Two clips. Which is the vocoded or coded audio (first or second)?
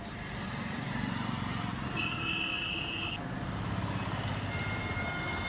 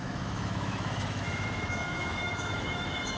second